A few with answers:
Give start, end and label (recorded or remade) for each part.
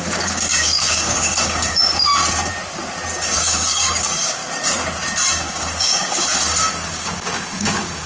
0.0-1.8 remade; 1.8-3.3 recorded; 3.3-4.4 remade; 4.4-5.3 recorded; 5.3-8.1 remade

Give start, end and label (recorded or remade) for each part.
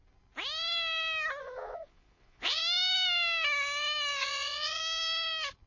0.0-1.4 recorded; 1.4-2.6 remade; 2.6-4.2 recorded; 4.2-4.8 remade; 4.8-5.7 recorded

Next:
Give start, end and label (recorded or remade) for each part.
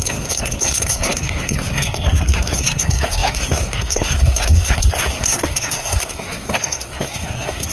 0.0-7.7 remade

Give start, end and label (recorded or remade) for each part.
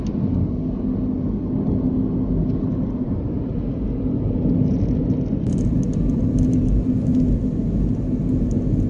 0.0-2.7 recorded; 2.7-7.1 remade; 7.1-8.9 recorded